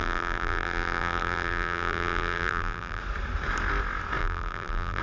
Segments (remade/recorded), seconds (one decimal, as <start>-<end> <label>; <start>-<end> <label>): 0.0-3.0 remade; 3.0-4.2 recorded; 4.2-5.0 remade